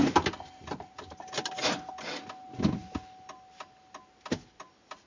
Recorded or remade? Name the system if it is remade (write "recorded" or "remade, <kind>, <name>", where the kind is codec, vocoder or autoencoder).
recorded